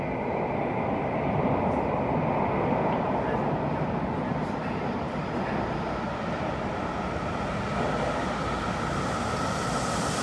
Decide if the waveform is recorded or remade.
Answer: recorded